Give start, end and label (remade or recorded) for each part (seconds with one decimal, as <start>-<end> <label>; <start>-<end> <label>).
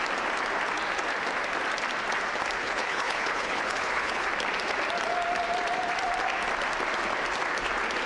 0.0-2.6 recorded; 2.6-4.3 remade; 4.3-8.1 recorded